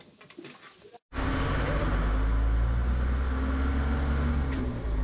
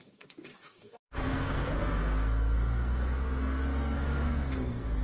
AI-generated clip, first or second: second